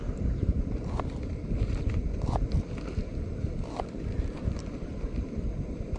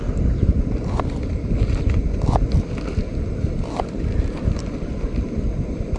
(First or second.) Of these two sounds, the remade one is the first